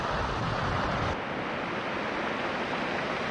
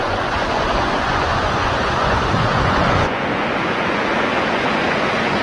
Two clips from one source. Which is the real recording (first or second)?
first